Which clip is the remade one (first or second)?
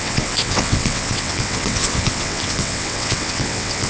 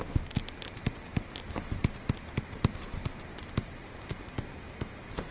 first